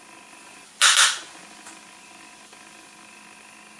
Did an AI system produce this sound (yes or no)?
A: no